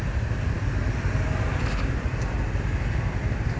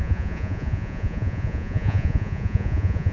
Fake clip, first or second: second